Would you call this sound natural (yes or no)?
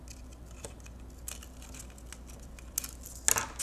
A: yes